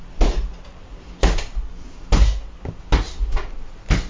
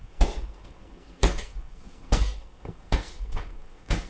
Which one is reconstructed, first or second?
second